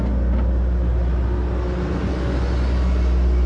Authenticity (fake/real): real